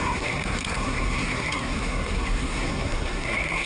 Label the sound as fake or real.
fake